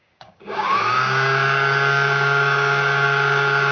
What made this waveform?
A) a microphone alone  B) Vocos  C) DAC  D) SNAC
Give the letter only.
C